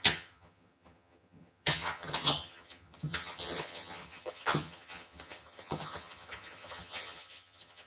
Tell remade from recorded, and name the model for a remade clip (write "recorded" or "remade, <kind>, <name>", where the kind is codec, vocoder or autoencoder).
remade, vocoder, HiFi-GAN